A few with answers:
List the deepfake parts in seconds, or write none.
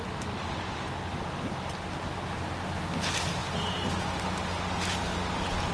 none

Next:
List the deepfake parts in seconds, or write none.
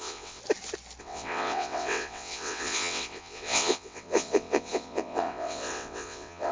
0.0-0.4 (vocoder, WaveNeXt); 1.0-6.5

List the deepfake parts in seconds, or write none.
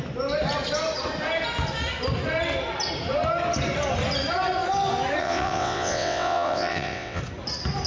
5.2-7.2 (vocoder, WaveNeXt)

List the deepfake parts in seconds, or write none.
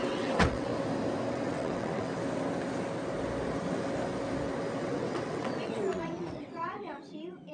0.0-0.7 (vocoder, WaveNeXt); 1.3-2.1; 4.8-7.5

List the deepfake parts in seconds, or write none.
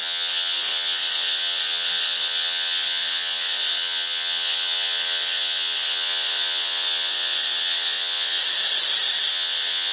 0.0-8.4 (vocoder, WaveNeXt); 9.3-9.9